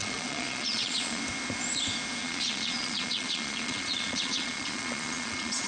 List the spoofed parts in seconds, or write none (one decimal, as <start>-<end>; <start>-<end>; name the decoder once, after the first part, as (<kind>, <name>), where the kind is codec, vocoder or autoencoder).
0.0-1.2 (vocoder, Vocos); 2.2-5.7